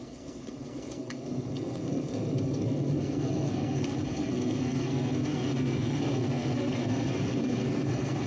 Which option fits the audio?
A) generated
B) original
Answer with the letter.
A